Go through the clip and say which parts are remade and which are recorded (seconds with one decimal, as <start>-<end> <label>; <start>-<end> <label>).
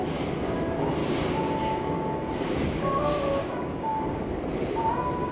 0.0-1.0 recorded; 1.0-4.2 remade; 4.2-5.3 recorded